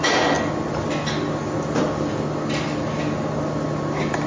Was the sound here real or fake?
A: real